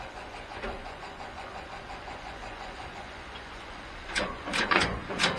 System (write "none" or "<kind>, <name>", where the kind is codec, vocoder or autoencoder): vocoder, Vocos